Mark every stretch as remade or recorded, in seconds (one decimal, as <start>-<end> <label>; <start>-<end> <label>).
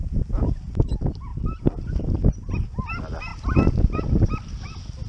0.0-0.7 remade; 0.7-1.3 recorded; 1.3-1.9 remade; 1.9-5.1 recorded